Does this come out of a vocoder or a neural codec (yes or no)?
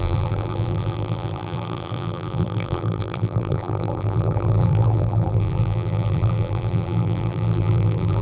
yes